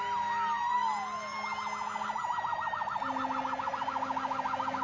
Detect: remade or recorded recorded